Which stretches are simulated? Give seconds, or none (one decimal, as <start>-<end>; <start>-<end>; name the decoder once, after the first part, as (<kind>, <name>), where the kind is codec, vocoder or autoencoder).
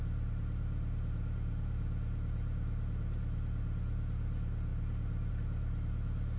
none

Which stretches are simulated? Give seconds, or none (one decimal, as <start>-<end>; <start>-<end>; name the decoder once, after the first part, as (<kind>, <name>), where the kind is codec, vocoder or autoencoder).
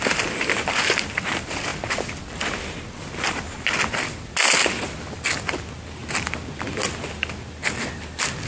none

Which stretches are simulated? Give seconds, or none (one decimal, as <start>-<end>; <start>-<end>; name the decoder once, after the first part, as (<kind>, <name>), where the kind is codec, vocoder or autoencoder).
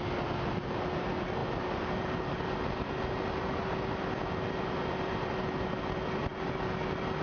none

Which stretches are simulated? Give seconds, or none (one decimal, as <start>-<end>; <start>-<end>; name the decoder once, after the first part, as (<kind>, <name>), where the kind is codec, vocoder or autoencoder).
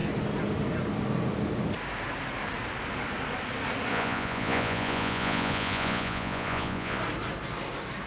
3.9-7.0 (vocoder, Vocos)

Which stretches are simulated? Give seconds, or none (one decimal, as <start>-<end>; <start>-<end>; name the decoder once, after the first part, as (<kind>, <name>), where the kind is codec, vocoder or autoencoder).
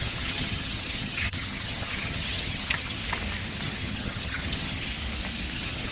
0.0-3.0 (vocoder, HiFi-GAN); 3.6-4.9; 5.5-5.9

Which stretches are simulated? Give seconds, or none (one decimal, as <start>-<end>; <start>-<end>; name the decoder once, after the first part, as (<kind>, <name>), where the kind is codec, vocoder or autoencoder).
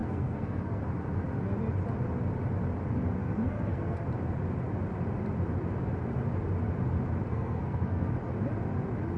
0.0-0.8 (codec, SNAC); 3.2-4.0; 7.3-8.1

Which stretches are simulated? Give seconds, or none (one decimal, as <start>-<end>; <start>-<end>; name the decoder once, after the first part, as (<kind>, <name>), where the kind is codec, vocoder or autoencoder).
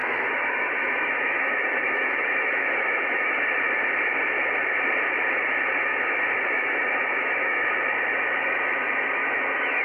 0.0-3.4 (autoencoder, DAC-VAE); 5.9-7.7; 9.2-9.8